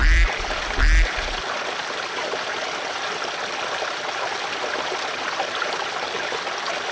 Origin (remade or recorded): recorded